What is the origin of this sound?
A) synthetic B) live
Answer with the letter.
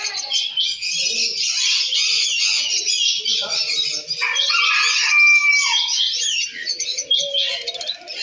B